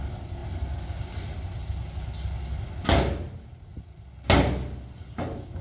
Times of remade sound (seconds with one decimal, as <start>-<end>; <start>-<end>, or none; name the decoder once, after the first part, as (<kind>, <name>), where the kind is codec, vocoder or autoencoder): none